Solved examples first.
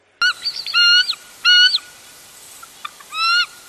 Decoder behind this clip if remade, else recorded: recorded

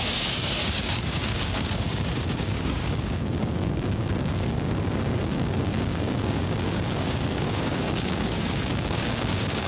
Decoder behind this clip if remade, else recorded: remade, codec, DAC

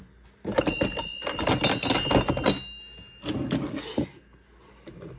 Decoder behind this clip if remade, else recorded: recorded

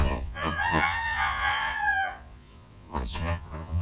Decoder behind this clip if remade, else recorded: remade, vocoder, Vocos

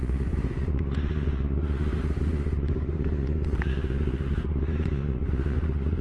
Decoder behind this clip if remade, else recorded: remade, vocoder, Vocos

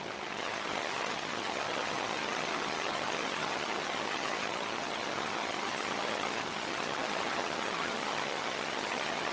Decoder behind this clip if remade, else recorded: remade, vocoder, HiFi-GAN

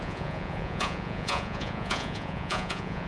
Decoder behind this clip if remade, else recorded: remade, vocoder, Vocos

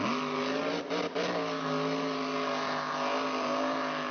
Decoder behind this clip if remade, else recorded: recorded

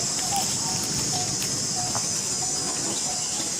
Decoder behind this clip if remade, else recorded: recorded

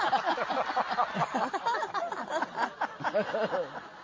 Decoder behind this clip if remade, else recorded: recorded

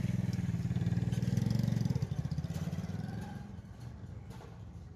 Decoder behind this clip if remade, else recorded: recorded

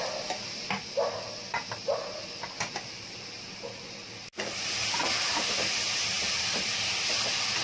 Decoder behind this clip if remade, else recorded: recorded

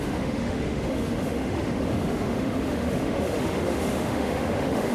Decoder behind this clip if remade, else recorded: remade, autoencoder, DAC-VAE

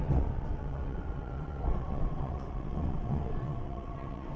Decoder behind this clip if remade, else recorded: remade, vocoder, WaveNeXt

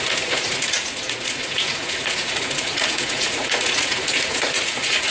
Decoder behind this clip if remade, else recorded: remade, vocoder, Vocos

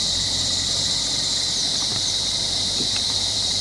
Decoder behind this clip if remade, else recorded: remade, vocoder, BigVGAN v2